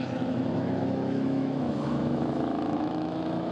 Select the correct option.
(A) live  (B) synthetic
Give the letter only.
B